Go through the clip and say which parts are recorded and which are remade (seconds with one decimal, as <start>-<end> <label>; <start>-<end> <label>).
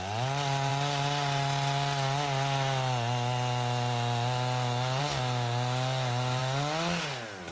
0.0-7.5 recorded